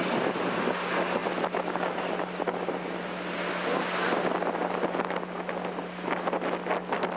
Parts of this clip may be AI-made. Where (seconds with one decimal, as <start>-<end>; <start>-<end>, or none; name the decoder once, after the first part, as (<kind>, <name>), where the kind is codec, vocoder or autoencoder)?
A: none